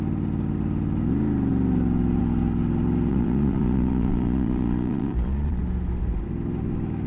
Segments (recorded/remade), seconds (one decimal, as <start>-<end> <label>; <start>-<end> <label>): 0.0-3.1 recorded; 3.1-5.6 remade; 5.6-7.1 recorded